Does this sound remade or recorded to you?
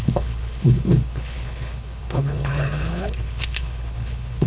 remade